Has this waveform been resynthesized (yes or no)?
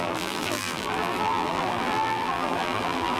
yes